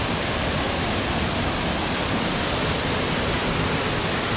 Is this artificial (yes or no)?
no